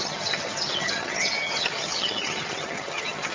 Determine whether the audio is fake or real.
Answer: fake